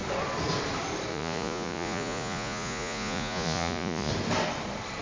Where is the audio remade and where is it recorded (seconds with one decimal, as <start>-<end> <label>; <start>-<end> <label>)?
0.0-1.1 recorded; 1.1-4.1 remade; 4.1-5.0 recorded